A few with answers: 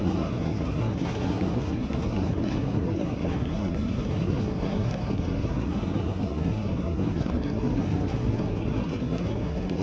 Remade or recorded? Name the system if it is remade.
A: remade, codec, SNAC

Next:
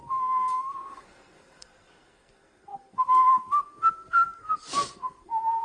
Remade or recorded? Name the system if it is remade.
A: remade, codec, SNAC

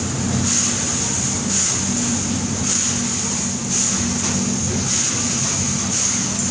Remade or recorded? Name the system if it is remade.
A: recorded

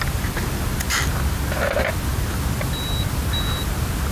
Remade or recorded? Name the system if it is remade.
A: recorded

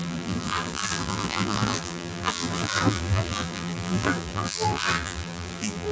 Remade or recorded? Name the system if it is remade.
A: remade, vocoder, BigVGAN v2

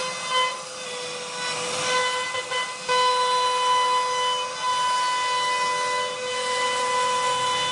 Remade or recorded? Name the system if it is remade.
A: recorded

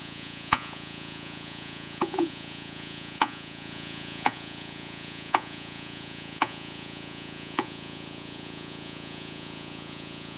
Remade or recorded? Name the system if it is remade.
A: remade, vocoder, Vocos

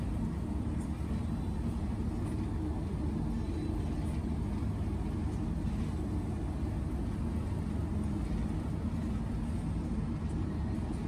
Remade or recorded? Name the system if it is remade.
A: recorded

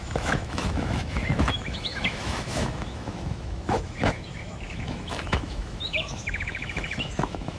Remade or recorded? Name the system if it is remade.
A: remade, autoencoder, DAC-VAE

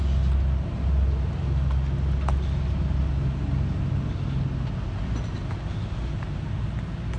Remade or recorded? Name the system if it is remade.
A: recorded